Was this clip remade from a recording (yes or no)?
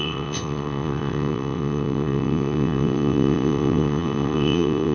yes